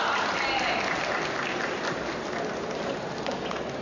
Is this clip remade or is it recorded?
recorded